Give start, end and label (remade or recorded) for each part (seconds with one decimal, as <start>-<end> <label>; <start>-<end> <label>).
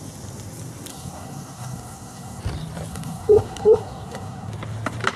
0.0-0.9 recorded; 0.9-2.4 remade; 2.4-2.9 recorded; 2.9-4.5 remade; 4.5-5.2 recorded